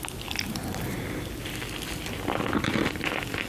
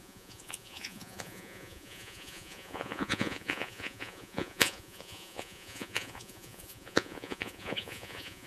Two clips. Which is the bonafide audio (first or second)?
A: first